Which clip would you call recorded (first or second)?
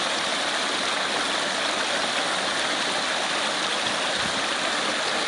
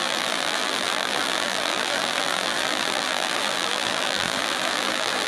first